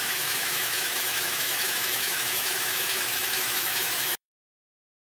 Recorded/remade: remade